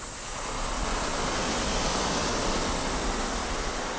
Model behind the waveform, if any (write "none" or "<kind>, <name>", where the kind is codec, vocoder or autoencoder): none